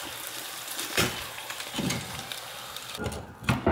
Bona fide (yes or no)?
yes